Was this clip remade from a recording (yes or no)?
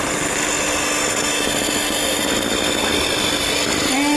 no